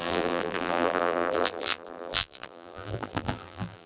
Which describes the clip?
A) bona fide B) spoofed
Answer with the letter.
B